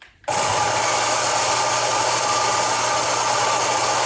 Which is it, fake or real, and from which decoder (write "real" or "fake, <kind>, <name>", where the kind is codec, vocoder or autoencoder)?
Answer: real